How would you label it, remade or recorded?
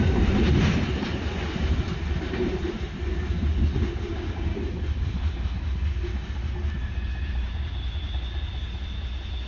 recorded